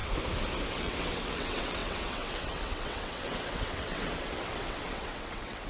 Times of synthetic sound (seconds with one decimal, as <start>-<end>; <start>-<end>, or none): 0.7-5.7